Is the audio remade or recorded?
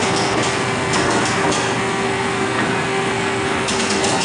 remade